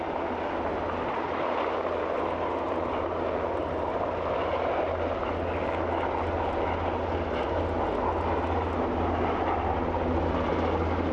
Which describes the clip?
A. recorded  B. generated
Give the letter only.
A